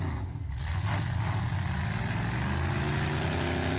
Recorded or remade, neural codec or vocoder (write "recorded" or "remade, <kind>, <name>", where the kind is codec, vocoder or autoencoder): recorded